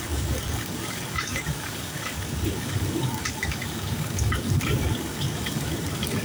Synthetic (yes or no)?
yes